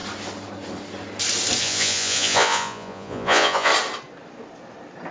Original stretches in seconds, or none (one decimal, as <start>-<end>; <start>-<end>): 0.0-1.6; 3.7-5.1